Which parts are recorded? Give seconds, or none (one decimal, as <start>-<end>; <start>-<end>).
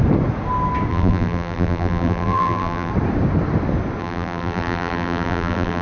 0.0-0.9; 2.9-4.0